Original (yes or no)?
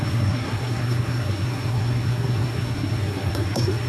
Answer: no